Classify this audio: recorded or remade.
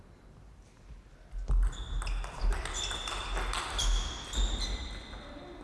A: recorded